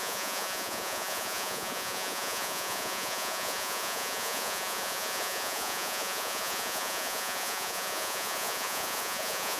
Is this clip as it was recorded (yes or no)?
no